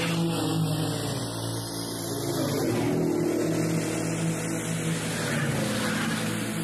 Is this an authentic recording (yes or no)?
yes